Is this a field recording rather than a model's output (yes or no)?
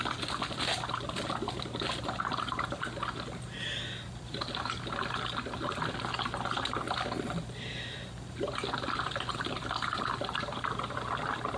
yes